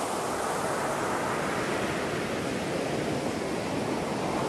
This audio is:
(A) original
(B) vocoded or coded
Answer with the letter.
A